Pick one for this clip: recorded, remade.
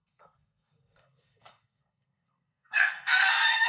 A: remade